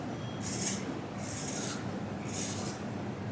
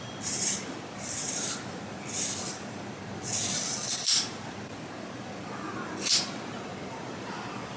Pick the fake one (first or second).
second